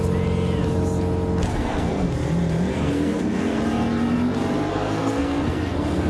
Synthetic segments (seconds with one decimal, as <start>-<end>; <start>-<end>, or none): 1.5-2.1; 2.7-3.6; 4.7-6.1